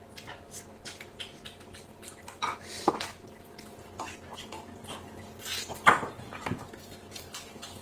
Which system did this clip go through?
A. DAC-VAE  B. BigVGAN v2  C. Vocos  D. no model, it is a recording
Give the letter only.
D